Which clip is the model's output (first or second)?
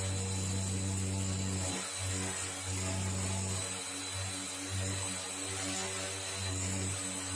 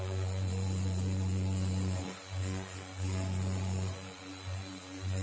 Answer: second